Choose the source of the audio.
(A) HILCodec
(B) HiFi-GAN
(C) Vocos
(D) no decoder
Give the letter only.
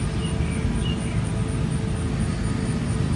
D